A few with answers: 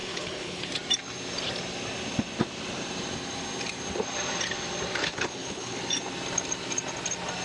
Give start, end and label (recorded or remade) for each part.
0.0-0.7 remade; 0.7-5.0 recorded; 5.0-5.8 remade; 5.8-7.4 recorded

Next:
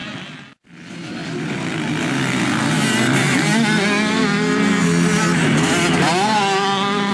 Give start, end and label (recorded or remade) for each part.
0.0-7.1 recorded

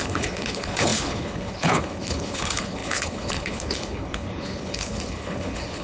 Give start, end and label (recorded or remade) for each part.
0.0-5.8 remade

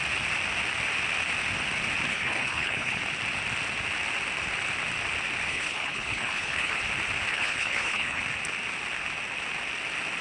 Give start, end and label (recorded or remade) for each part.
0.0-2.1 recorded; 2.1-3.0 remade; 3.0-5.5 recorded; 5.5-6.8 remade; 6.8-7.3 recorded; 7.3-8.2 remade; 8.2-10.2 recorded

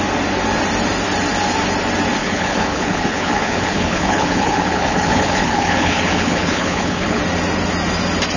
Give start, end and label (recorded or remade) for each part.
0.0-2.2 recorded; 2.2-7.2 remade; 7.2-8.4 recorded

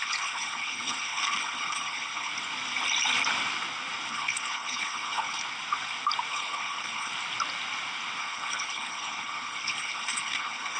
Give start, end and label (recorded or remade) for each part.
0.0-2.3 remade; 2.3-4.1 recorded; 4.1-5.4 remade; 5.4-6.3 recorded; 6.3-7.1 remade; 7.1-8.2 recorded; 8.2-10.8 remade